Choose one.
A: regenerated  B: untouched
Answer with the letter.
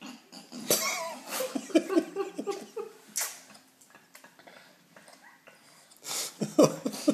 B